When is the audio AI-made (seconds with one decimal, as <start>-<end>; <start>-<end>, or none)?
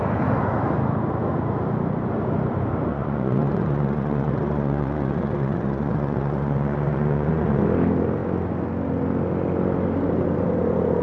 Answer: 2.9-7.6